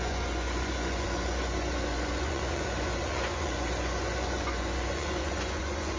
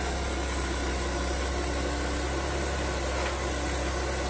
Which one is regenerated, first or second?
first